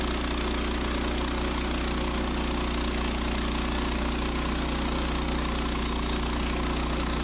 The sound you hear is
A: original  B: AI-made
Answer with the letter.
A